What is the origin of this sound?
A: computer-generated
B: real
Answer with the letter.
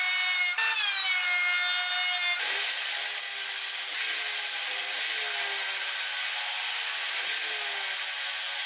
B